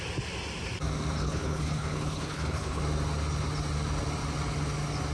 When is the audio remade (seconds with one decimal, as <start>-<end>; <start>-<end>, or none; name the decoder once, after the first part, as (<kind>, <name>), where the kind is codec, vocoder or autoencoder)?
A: 1.2-2.8 (codec, HILCodec)